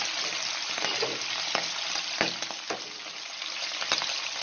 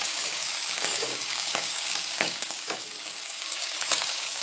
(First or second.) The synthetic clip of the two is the second